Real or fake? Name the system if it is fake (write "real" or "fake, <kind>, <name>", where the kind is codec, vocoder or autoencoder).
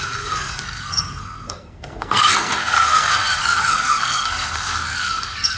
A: fake, codec, SNAC